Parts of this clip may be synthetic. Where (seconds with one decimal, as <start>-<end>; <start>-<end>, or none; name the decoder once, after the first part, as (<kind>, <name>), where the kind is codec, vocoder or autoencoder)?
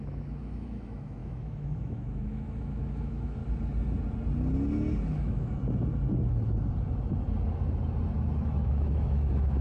0.0-3.4 (autoencoder, DAC-VAE); 5.1-5.6; 8.4-9.6